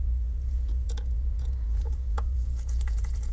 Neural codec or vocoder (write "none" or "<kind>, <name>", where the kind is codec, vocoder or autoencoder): vocoder, Vocos